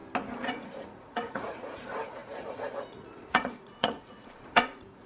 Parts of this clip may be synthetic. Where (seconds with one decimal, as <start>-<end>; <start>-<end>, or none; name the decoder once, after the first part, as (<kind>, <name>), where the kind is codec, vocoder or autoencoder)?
0.5-5.1 (vocoder, Vocos)